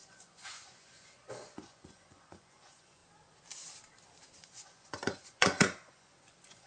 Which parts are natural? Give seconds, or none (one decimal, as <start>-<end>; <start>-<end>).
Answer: 3.0-4.4